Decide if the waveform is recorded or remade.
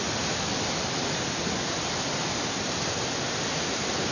recorded